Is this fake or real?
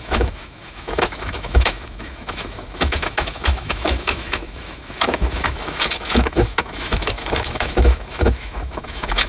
fake